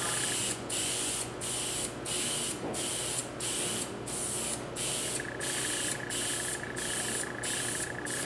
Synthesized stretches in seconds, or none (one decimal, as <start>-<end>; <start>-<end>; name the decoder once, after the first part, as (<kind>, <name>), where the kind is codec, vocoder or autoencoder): 0.4-1.6 (vocoder, Vocos)

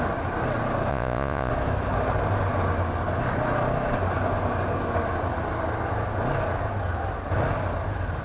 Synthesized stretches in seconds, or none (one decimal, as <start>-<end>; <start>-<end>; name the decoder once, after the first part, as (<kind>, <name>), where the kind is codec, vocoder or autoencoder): 0.9-1.5 (vocoder, Vocos)

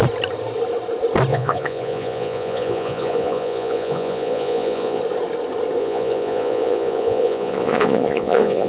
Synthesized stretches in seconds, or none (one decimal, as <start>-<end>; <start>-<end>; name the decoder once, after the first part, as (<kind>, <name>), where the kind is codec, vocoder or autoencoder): 1.3-5.0 (vocoder, Vocos); 5.8-8.7